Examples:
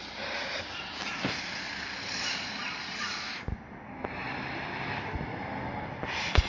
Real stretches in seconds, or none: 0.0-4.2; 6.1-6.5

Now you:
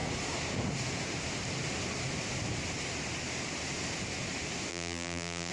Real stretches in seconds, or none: 0.0-4.7

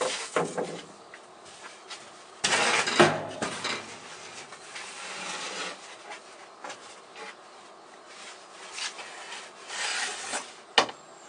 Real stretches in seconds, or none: 0.0-11.3

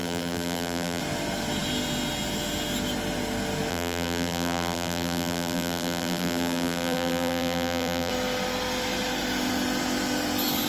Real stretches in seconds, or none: 1.0-3.7; 8.1-10.7